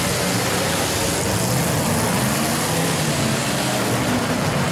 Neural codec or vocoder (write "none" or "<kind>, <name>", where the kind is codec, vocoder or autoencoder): none